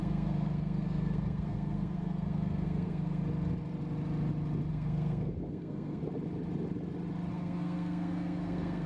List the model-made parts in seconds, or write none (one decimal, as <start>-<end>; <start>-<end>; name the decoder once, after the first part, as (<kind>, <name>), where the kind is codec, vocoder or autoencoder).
0.0-3.2 (codec, SNAC); 4.7-6.0; 7.3-8.9

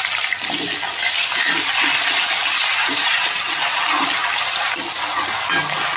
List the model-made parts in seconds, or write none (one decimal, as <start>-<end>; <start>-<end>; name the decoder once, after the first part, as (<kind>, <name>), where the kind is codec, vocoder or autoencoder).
none

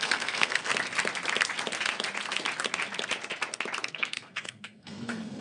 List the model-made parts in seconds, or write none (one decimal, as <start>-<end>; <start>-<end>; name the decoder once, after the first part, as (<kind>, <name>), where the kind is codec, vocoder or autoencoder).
0.0-0.7 (codec, SNAC); 3.9-5.4

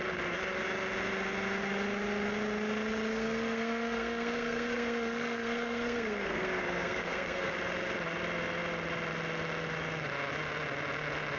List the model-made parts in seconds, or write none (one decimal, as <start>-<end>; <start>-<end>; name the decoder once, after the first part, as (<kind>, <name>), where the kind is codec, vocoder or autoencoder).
3.1-7.5 (codec, SNAC)

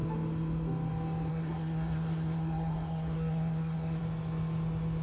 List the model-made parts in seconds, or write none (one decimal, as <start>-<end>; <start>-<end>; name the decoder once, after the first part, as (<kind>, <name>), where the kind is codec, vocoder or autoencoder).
1.3-4.0 (codec, SNAC)

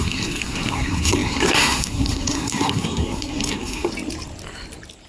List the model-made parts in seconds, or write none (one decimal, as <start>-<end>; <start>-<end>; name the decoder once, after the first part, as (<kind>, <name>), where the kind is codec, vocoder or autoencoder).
0.0-3.9 (codec, SNAC)

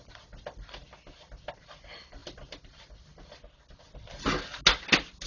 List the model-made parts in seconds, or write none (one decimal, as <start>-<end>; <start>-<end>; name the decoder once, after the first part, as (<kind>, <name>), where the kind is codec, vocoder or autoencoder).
none

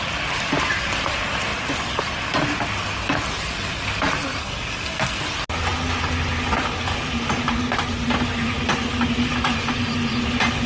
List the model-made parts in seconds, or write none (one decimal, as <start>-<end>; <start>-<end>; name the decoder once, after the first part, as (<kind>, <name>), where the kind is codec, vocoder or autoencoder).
4.4-5.2 (codec, SNAC)